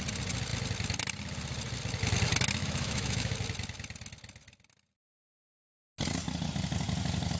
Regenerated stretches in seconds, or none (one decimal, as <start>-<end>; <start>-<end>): 2.6-3.3